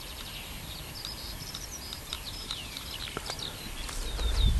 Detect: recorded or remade recorded